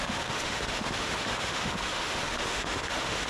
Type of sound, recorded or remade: remade